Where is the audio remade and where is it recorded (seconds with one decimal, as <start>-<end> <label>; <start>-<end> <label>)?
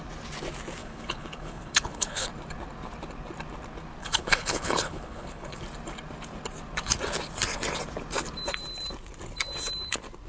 0.0-0.8 recorded; 0.8-2.3 remade; 2.3-4.0 recorded; 4.0-5.6 remade; 5.6-10.3 recorded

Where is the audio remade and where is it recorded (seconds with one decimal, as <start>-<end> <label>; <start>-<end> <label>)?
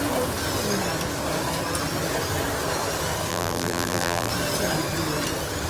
0.0-3.3 recorded; 3.3-4.3 remade; 4.3-5.7 recorded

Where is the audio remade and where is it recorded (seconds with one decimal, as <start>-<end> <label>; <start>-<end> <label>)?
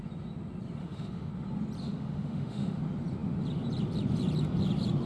0.0-0.8 recorded; 0.8-1.3 remade; 1.3-1.8 recorded; 1.8-2.8 remade; 2.8-5.1 recorded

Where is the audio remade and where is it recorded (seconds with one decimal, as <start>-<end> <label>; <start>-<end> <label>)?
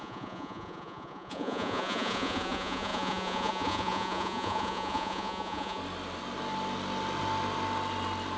0.0-5.8 remade; 5.8-8.4 recorded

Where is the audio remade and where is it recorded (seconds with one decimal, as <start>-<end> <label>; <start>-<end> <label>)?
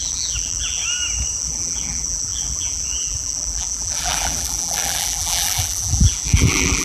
0.0-0.8 remade; 0.8-1.4 recorded; 1.4-6.8 remade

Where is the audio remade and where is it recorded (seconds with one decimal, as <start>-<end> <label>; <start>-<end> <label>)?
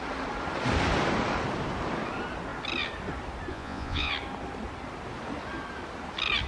0.0-3.5 recorded; 3.5-4.1 remade; 4.1-6.5 recorded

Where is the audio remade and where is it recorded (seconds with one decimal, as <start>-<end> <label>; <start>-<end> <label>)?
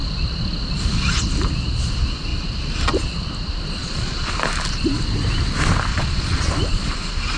0.0-3.8 recorded; 3.8-4.3 remade; 4.3-5.9 recorded; 5.9-6.5 remade; 6.5-7.4 recorded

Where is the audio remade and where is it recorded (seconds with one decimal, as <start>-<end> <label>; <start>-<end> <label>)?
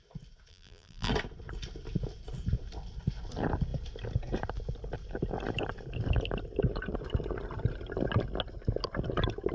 0.0-0.5 recorded; 0.5-1.1 remade; 1.1-9.5 recorded